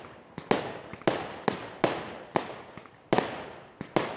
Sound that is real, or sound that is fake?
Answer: real